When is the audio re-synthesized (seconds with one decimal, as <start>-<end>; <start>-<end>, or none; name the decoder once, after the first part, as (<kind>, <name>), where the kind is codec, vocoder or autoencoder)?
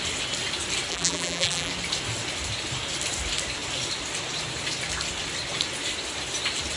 0.9-1.7 (vocoder, BigVGAN v2)